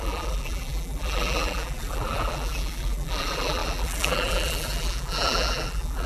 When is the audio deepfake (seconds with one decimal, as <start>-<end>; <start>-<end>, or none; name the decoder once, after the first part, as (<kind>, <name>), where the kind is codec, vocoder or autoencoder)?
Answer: 0.0-6.1 (vocoder, BigVGAN v2)